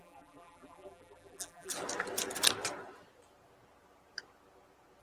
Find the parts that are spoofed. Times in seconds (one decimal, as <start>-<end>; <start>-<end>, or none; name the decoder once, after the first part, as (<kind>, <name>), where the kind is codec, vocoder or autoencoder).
0.0-1.7 (vocoder, BigVGAN v2)